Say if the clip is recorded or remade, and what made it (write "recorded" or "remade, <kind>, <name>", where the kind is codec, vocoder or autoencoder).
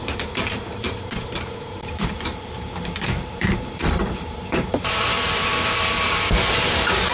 remade, vocoder, BigVGAN v2